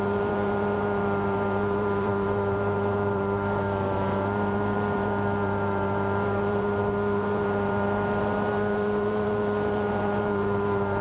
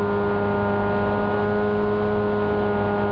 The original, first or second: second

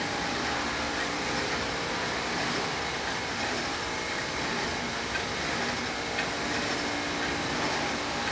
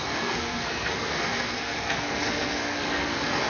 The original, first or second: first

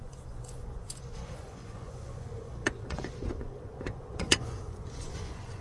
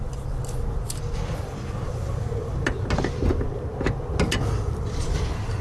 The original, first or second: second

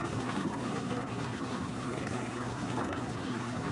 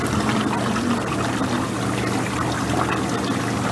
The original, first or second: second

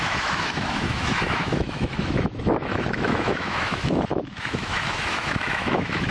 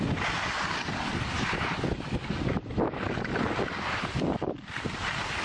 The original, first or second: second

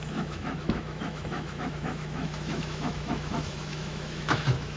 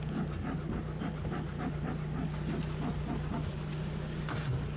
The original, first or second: second